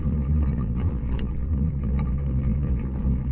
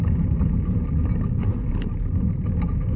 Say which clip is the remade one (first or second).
first